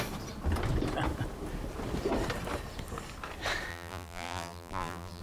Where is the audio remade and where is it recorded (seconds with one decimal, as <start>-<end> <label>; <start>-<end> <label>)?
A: 0.0-3.7 recorded; 3.7-5.2 remade